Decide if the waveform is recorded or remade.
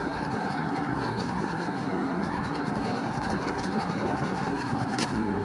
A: remade